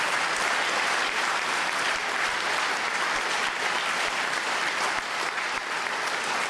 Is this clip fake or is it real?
fake